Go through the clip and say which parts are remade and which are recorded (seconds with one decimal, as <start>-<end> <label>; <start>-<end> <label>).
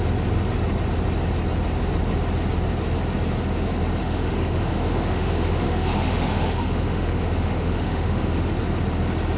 0.0-4.0 recorded; 4.0-8.5 remade; 8.5-9.4 recorded